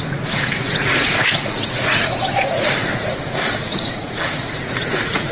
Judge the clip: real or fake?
fake